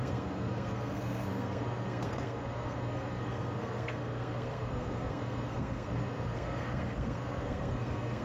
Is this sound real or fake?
fake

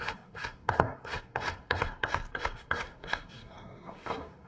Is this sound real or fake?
fake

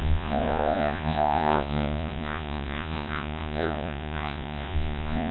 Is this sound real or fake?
fake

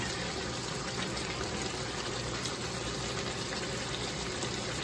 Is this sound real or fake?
real